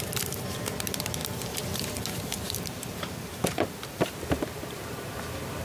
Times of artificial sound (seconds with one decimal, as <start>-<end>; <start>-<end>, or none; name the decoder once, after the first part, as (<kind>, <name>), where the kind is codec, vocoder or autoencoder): 0.0-5.6 (vocoder, BigVGAN v2)